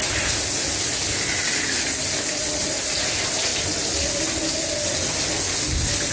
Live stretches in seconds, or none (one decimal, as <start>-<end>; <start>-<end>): 0.0-6.1